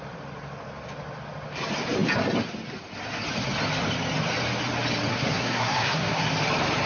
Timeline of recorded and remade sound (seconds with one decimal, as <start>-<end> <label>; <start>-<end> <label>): 0.0-5.1 recorded; 5.1-6.2 remade; 6.2-6.9 recorded